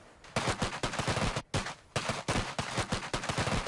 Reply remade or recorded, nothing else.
recorded